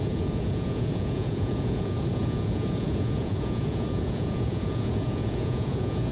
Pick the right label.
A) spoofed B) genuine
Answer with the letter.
A